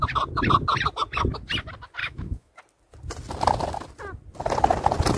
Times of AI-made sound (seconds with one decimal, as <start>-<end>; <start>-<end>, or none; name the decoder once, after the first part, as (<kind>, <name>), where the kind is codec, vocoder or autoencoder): 2.0-2.5 (autoencoder, DAC-VAE)